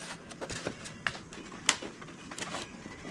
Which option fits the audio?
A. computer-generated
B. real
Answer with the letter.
B